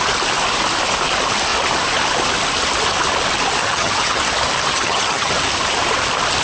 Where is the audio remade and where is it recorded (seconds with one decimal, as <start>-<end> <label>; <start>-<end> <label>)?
0.0-3.6 recorded; 3.6-4.2 remade; 4.2-4.7 recorded; 4.7-5.3 remade; 5.3-6.4 recorded